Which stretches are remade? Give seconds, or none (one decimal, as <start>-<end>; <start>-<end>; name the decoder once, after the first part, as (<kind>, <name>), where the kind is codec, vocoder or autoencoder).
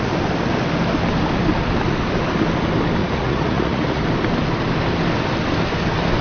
3.0-4.0 (vocoder, Vocos)